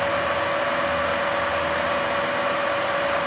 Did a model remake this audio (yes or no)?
no